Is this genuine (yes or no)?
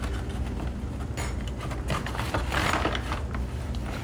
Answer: yes